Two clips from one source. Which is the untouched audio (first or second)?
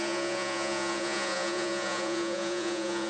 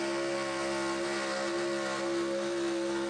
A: second